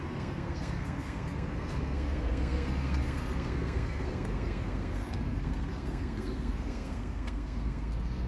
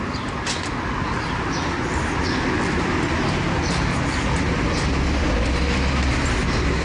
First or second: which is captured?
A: second